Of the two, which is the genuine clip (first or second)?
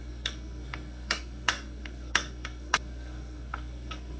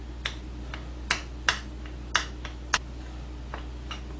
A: second